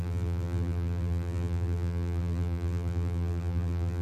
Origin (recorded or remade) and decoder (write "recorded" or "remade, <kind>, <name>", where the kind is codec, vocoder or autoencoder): remade, vocoder, BigVGAN v2